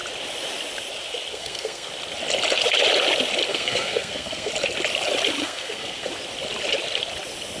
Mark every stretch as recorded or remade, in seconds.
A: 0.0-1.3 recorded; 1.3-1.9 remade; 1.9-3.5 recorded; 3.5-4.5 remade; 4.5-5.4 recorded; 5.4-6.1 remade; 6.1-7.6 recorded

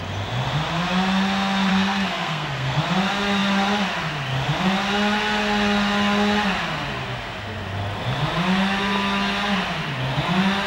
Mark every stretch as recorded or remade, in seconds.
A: 0.0-1.7 recorded; 1.7-2.8 remade; 2.8-10.7 recorded

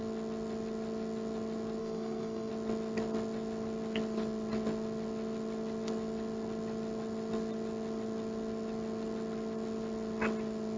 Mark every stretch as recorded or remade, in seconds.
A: 0.0-1.8 recorded; 1.8-2.5 remade; 2.5-10.8 recorded